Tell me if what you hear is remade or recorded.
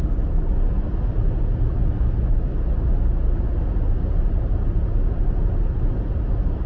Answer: recorded